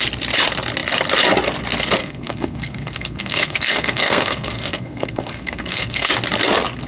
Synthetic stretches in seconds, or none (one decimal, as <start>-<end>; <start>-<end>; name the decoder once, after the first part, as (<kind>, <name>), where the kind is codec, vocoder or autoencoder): 2.0-6.1 (codec, SNAC)